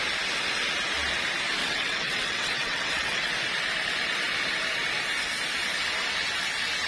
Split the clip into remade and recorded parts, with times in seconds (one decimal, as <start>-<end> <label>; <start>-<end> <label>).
0.0-1.6 recorded; 1.6-3.3 remade; 3.3-6.9 recorded